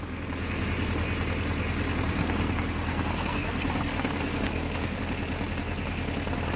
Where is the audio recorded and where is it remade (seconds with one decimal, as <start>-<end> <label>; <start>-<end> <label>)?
0.0-2.2 recorded; 2.2-5.0 remade; 5.0-6.6 recorded